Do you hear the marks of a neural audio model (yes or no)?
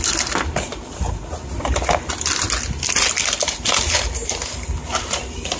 no